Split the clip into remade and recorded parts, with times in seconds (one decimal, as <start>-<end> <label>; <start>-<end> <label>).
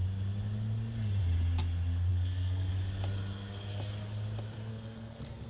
0.0-2.1 recorded; 2.1-2.7 remade; 2.7-4.7 recorded; 4.7-5.5 remade